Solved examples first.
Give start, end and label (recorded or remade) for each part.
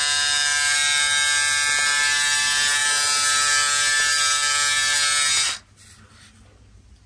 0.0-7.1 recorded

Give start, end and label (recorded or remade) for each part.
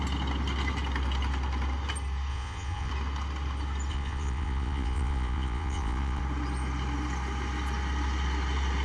0.0-2.3 recorded; 2.3-2.9 remade; 2.9-3.9 recorded; 3.9-6.2 remade; 6.2-8.8 recorded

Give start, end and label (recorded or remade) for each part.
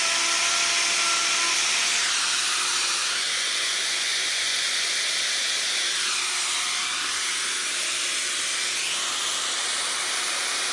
0.0-3.0 recorded; 3.0-4.9 remade; 4.9-10.7 recorded